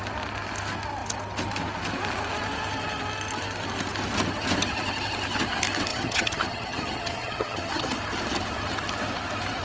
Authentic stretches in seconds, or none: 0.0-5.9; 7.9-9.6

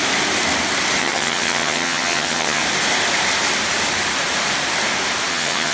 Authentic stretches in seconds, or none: 0.0-1.0; 2.6-5.3

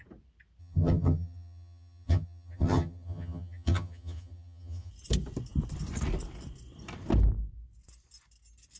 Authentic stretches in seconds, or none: 0.0-0.6; 4.9-8.8

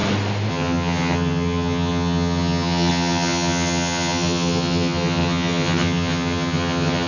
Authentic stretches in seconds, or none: 0.0-0.5

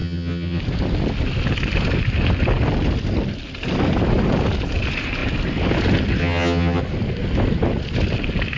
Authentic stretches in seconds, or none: 0.6-6.2; 6.8-8.6

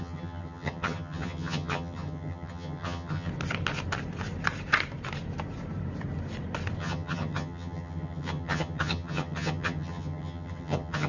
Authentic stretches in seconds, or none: 3.3-6.8